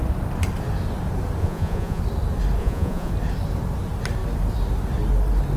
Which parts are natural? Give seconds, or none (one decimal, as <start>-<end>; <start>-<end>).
0.0-1.4; 2.0-2.6; 3.1-5.6